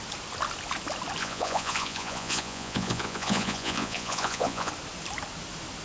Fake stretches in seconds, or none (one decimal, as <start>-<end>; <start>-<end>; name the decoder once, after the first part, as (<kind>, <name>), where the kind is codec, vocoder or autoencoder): 1.2-4.7 (vocoder, Vocos)